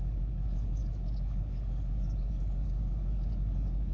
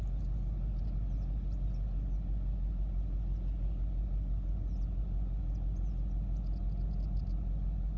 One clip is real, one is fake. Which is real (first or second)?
second